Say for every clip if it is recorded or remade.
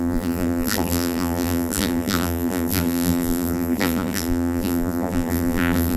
remade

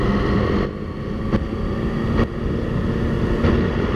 recorded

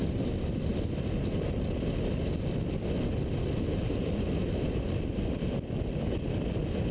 recorded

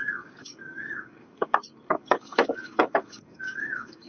remade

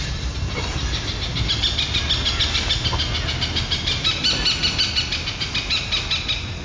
recorded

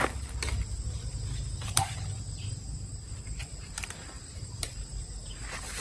remade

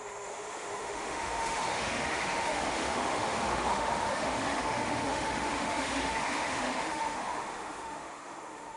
remade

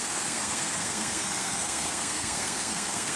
remade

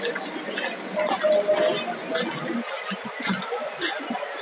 recorded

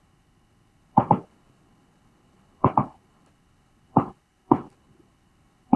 remade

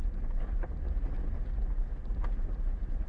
recorded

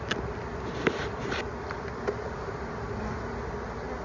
recorded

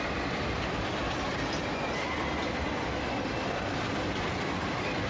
recorded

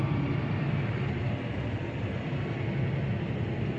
recorded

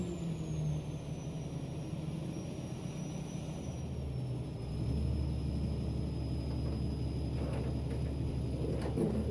recorded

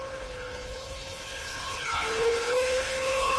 remade